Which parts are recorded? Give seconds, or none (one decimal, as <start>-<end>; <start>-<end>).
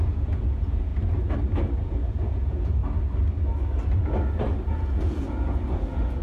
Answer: 0.9-1.9; 2.8-4.7